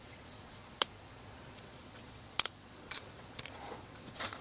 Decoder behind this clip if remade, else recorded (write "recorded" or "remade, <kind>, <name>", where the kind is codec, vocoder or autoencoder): remade, vocoder, Vocos